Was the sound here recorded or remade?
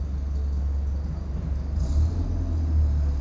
recorded